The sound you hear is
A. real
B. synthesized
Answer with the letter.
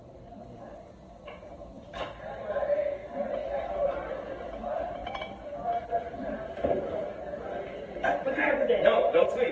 B